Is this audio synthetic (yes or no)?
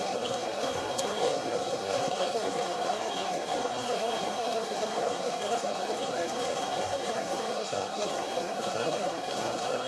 yes